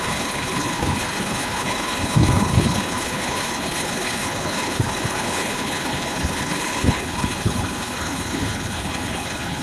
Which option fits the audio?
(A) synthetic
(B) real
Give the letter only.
A